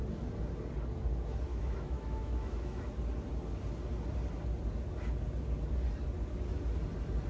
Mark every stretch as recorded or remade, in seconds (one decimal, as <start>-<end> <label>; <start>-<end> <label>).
0.0-1.5 recorded; 1.5-2.9 remade; 2.9-7.3 recorded